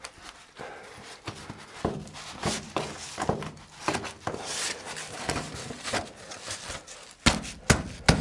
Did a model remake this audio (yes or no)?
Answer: no